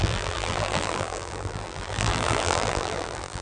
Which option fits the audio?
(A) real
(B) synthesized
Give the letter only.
B